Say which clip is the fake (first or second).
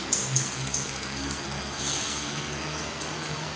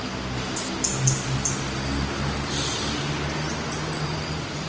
first